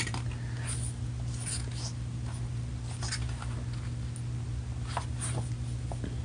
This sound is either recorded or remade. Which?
recorded